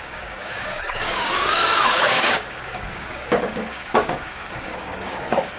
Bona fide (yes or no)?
no